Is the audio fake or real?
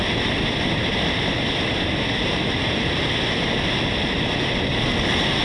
real